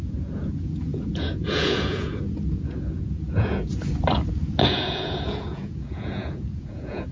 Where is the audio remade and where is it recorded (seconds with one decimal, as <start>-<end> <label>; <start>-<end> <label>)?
0.0-3.7 remade; 3.7-4.6 recorded; 4.6-7.1 remade